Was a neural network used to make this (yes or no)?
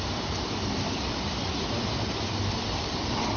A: no